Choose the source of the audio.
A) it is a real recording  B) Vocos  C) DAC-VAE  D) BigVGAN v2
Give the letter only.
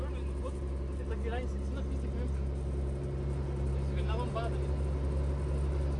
A